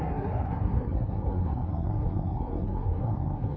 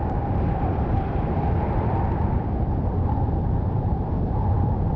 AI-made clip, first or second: first